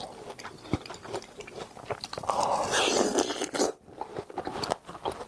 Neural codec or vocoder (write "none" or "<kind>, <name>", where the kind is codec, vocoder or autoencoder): none